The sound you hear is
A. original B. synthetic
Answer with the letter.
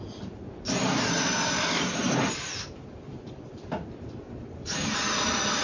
A